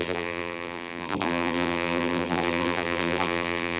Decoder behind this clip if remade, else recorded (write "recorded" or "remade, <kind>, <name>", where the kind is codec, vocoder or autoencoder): remade, vocoder, BigVGAN v2